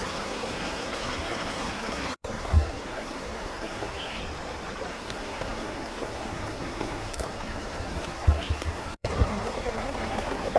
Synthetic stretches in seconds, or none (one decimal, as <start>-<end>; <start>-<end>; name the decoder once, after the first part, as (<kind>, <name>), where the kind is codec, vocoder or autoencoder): 0.0-4.2 (codec, SNAC); 4.9-10.6